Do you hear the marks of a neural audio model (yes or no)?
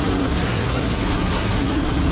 yes